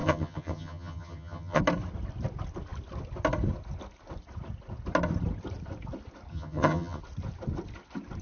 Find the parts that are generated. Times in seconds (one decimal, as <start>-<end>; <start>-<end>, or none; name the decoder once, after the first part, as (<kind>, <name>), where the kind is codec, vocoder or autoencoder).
0.0-1.6 (vocoder, HiFi-GAN); 6.3-7.0